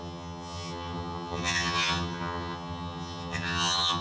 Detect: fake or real fake